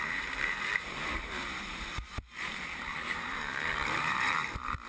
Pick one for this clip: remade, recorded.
remade